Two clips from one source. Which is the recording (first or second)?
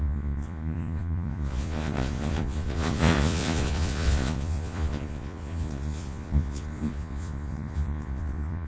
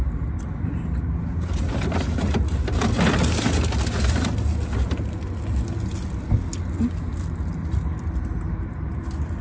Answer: second